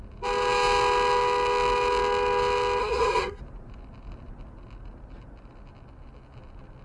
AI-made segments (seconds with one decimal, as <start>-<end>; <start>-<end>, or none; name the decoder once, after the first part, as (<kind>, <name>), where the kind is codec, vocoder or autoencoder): 2.8-3.4 (codec, SNAC)